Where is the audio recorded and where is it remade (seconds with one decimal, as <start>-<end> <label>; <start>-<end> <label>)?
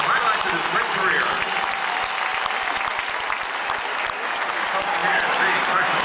0.0-6.0 recorded